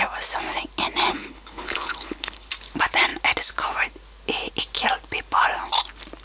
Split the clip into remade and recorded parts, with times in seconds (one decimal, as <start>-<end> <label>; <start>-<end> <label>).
0.0-1.1 recorded; 1.1-2.5 remade; 2.5-6.2 recorded